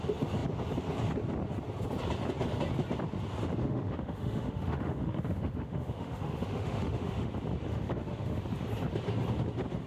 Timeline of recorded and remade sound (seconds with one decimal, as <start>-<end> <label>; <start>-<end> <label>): 0.0-3.6 recorded; 3.6-7.3 remade; 7.3-7.7 recorded; 7.7-8.4 remade; 8.4-9.9 recorded